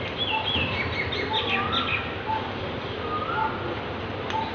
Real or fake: real